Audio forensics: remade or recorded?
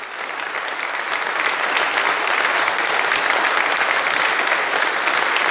recorded